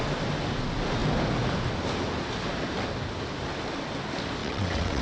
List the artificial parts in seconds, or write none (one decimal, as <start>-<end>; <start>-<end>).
4.4-5.0